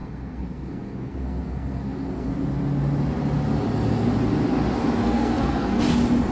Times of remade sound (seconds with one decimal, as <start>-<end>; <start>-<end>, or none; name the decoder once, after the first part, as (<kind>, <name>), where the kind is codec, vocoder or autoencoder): 0.0-2.3 (codec, SNAC); 5.0-5.8